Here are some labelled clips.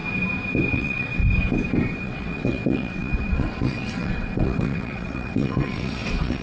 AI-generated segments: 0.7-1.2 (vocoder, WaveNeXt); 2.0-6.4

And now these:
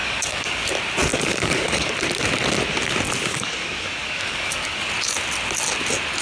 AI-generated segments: 0.0-0.7 (codec, DAC); 1.1-1.9; 3.3-4.9

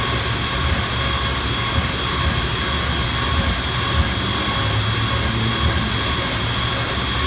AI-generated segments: none

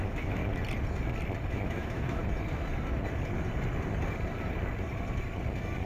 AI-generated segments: 0.0-0.4 (autoencoder, DAC-VAE); 1.5-2.2